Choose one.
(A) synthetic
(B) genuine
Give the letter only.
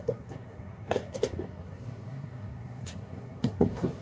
A